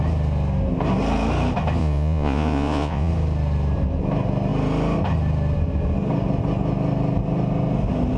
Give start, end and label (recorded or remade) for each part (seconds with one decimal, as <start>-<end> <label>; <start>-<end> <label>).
0.0-1.8 recorded; 1.8-3.1 remade; 3.1-8.2 recorded